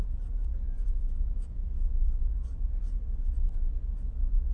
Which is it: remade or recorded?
recorded